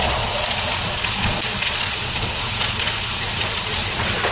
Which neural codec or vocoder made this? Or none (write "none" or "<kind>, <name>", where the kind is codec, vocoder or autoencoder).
vocoder, Vocos